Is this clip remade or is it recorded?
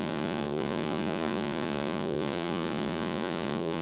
remade